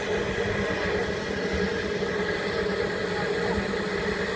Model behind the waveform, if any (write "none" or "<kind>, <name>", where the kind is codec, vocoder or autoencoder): none